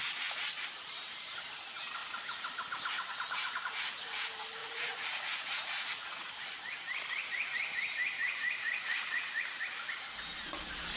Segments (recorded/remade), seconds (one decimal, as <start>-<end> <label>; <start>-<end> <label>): 0.0-4.6 recorded; 4.6-6.3 remade; 6.3-8.7 recorded; 8.7-9.3 remade; 9.3-11.0 recorded